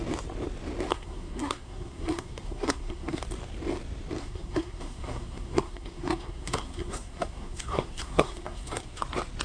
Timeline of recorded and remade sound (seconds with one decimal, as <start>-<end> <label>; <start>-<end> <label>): 0.0-0.9 recorded; 0.9-3.2 remade; 3.2-4.2 recorded; 4.2-9.0 remade; 9.0-9.4 recorded